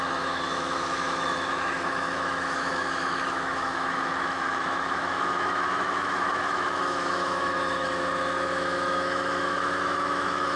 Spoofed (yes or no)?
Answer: yes